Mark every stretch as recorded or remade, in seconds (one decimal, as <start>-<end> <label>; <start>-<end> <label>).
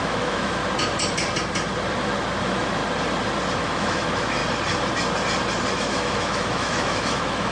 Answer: 0.0-0.6 remade; 0.6-2.4 recorded; 2.4-2.8 remade; 2.8-3.6 recorded; 3.6-4.4 remade; 4.4-5.7 recorded; 5.7-7.5 remade